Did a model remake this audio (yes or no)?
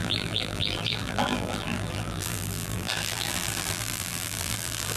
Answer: yes